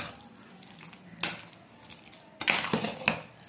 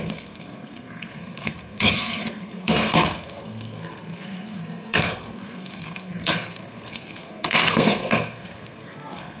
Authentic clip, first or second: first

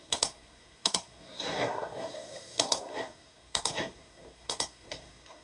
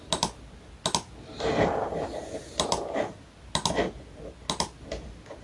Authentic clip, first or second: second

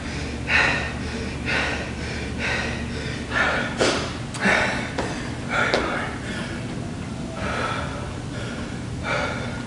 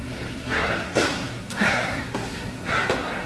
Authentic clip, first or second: first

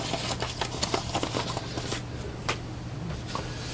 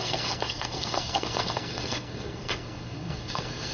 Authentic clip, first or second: first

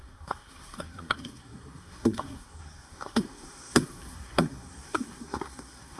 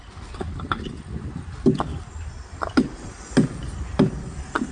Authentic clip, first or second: second